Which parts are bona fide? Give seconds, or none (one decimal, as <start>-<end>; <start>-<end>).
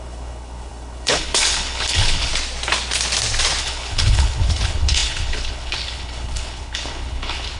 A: 2.3-3.6